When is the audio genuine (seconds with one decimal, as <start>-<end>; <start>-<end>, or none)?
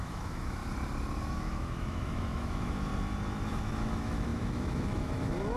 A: 0.6-1.2; 2.9-3.5